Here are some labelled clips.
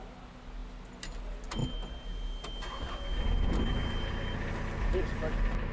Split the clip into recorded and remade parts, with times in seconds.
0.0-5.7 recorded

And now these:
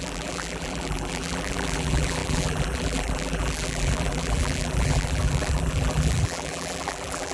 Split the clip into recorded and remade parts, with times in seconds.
0.0-7.3 remade

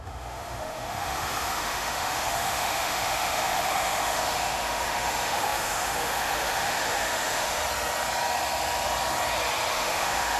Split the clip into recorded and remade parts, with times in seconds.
0.0-7.6 remade; 7.6-9.7 recorded; 9.7-10.4 remade

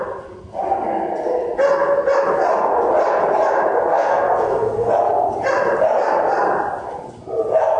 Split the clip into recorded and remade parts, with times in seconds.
0.0-3.9 recorded; 3.9-4.9 remade; 4.9-7.8 recorded

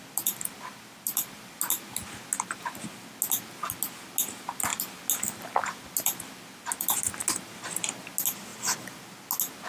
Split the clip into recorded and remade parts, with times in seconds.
0.0-9.7 recorded